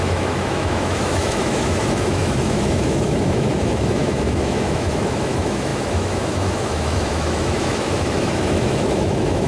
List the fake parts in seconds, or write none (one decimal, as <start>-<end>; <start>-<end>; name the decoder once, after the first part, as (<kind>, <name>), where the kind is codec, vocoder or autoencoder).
0.0-9.5 (autoencoder, DAC-VAE)